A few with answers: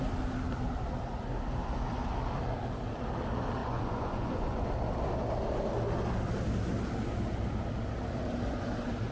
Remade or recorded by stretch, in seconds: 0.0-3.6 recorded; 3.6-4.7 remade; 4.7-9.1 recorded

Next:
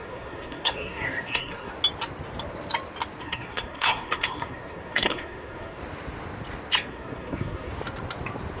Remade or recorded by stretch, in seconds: 0.0-1.7 remade; 1.7-3.2 recorded; 3.2-5.8 remade; 5.8-6.9 recorded; 6.9-7.7 remade; 7.7-8.6 recorded

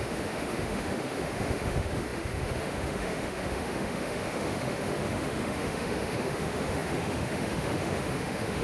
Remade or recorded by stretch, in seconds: 0.0-8.6 remade